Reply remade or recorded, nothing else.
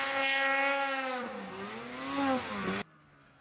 recorded